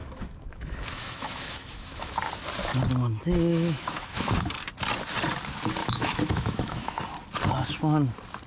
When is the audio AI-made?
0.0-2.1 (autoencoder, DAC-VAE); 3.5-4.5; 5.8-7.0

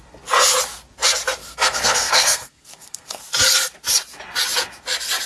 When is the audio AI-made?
1.4-3.2 (codec, SNAC)

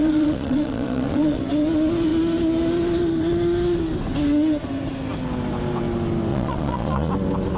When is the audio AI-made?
0.0-1.4 (vocoder, Vocos); 6.3-7.1